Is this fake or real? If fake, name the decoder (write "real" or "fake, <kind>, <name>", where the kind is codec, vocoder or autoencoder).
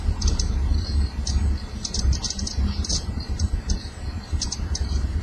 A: fake, vocoder, BigVGAN v2